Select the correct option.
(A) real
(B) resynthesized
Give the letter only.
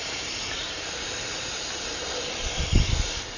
B